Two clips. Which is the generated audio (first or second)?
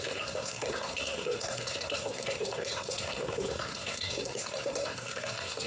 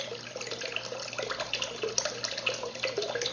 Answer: first